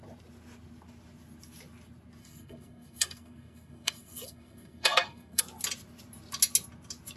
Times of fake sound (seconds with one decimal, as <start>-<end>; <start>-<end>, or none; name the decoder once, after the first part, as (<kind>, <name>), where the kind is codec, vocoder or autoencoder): 2.2-5.4 (codec, SNAC)